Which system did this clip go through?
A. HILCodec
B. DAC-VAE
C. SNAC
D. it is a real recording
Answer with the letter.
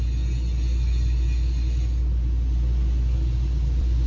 D